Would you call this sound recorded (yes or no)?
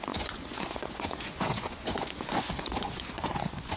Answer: no